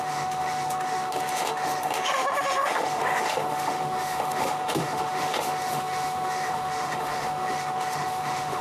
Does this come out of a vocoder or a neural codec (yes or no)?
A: yes